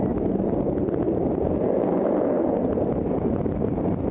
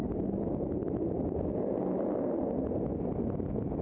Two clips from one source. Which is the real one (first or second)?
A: second